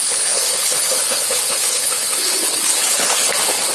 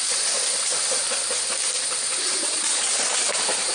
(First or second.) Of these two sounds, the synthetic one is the first